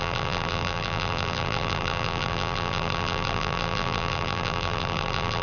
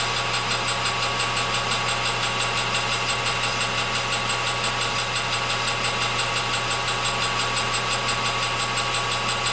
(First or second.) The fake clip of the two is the first